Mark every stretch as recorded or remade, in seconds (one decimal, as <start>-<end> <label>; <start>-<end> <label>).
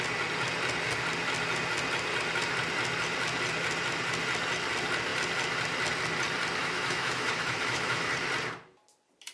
0.0-6.6 recorded; 6.6-8.1 remade; 8.1-9.3 recorded